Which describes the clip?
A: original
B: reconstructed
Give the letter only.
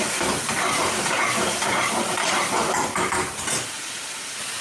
B